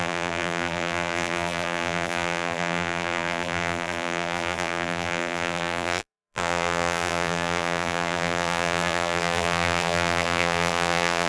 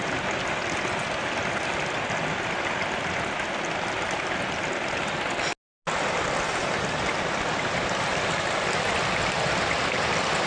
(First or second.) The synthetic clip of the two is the first